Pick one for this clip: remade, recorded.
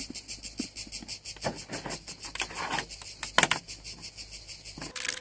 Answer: recorded